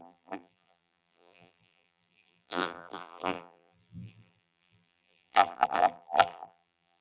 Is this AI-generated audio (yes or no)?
yes